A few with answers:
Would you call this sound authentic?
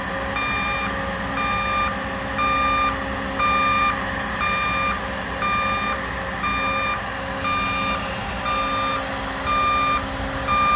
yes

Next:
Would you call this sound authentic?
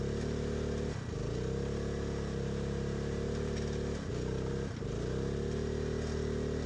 yes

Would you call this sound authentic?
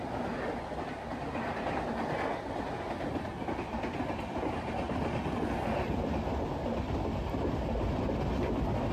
yes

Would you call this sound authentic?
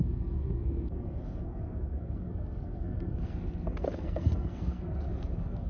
no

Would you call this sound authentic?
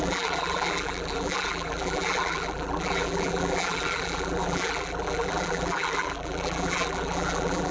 no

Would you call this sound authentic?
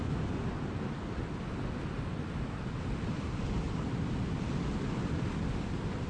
yes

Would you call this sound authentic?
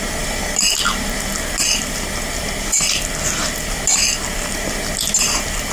yes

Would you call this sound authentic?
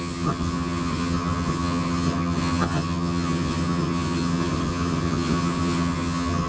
no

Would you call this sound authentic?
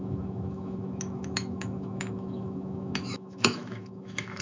no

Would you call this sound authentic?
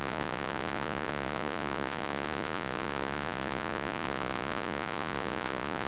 no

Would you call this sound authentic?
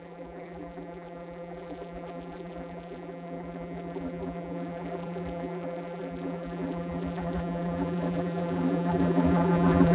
no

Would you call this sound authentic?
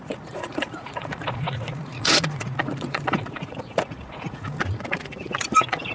no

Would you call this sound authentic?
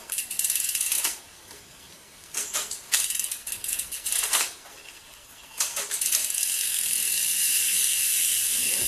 no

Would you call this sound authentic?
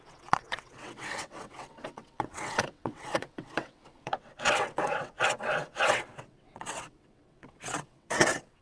no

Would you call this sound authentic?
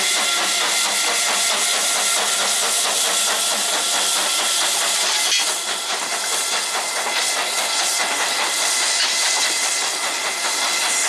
yes